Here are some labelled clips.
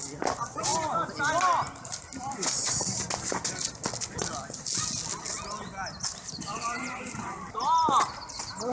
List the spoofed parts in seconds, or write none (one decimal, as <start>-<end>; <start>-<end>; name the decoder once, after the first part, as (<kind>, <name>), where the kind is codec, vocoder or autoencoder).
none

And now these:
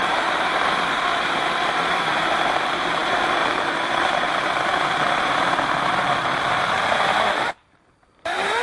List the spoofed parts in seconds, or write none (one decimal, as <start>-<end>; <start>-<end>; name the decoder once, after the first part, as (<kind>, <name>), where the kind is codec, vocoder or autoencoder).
0.0-8.6 (vocoder, BigVGAN v2)

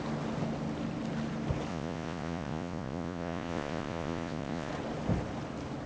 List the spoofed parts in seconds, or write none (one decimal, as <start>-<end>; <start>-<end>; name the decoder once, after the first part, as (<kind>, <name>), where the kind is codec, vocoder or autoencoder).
1.7-4.7 (vocoder, Vocos)

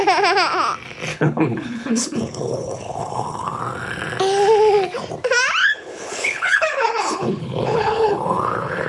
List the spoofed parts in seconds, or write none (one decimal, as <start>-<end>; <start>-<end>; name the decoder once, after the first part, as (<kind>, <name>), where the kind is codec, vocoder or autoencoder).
1.1-3.6 (codec, HILCodec); 5.6-8.9